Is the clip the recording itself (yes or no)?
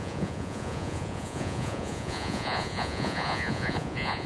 no